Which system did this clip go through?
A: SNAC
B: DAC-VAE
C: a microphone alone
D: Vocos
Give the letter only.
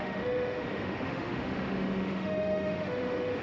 B